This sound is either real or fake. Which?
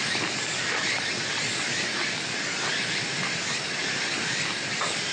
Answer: real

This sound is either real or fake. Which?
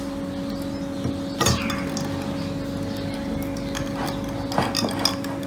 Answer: real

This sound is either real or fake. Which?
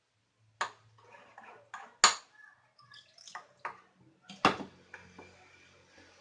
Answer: real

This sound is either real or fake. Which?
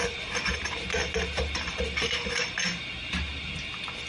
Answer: real